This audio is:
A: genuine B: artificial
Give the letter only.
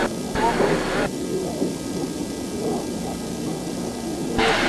A